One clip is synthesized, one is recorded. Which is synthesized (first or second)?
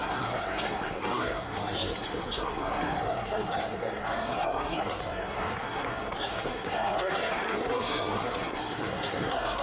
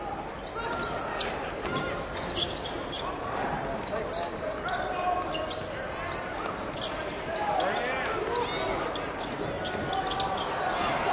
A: first